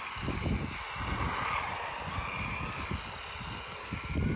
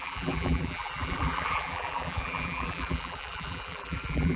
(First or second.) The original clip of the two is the first